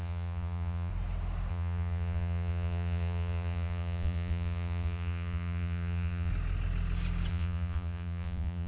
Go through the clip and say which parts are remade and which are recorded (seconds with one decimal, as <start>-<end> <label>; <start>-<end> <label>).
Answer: 0.0-0.9 remade; 0.9-1.5 recorded; 1.5-6.3 remade; 6.3-7.3 recorded; 7.3-8.7 remade